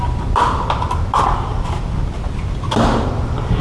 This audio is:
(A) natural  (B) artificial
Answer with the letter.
A